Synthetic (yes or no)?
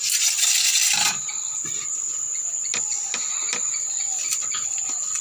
no